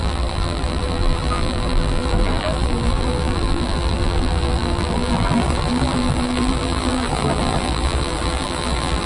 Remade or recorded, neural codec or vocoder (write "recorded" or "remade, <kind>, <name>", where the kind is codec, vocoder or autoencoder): remade, vocoder, BigVGAN v2